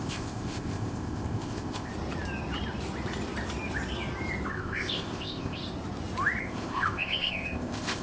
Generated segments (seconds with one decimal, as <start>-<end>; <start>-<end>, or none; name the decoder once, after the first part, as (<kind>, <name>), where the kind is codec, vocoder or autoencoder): 0.0-1.9 (codec, ZipCodec); 4.5-5.6; 6.4-8.0